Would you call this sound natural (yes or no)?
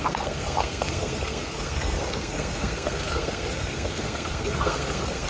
no